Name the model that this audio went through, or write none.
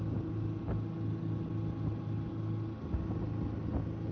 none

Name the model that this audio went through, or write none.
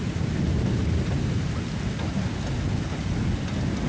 none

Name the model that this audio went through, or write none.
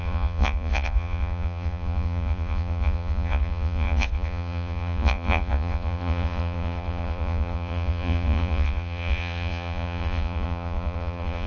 vocoder, Vocos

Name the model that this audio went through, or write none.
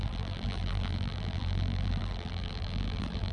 vocoder, BigVGAN v2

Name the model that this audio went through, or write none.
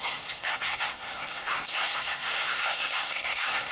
codec, SNAC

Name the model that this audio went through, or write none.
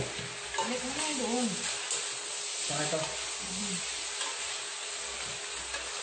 none